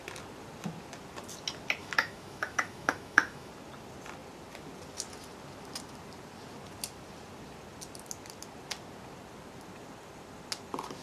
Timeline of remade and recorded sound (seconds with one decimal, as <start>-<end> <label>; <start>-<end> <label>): 0.0-1.8 recorded; 1.8-3.5 remade; 3.5-11.0 recorded